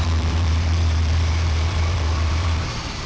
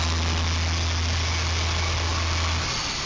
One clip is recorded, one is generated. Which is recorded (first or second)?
second